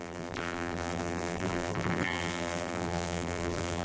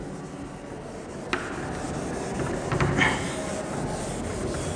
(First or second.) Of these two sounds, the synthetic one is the first